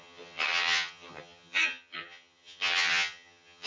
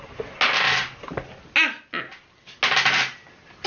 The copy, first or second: first